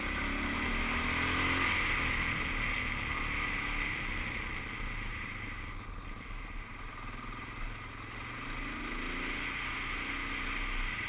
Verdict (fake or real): real